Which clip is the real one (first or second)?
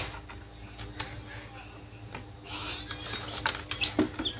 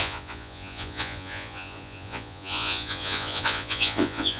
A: first